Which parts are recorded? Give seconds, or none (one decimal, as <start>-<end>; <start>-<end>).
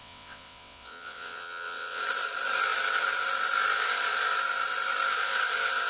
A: 2.0-5.9